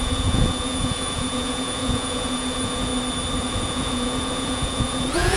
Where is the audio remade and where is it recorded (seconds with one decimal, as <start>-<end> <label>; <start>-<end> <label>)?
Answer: 0.0-2.9 remade; 2.9-3.4 recorded; 3.4-5.4 remade